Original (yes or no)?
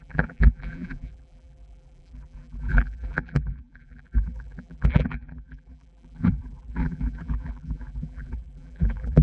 no